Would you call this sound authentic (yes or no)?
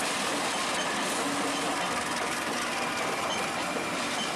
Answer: yes